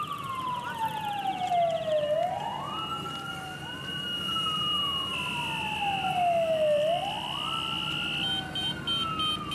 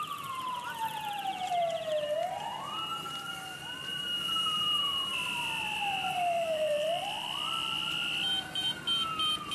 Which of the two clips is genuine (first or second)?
first